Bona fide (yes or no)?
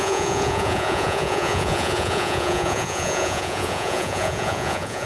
no